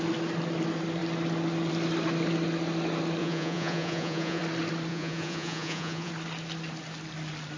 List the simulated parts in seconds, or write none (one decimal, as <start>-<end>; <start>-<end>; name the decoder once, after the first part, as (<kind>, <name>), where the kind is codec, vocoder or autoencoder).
3.2-4.4 (vocoder, Vocos); 4.9-6.1